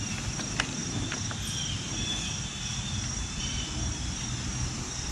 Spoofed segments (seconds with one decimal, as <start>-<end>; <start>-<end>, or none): none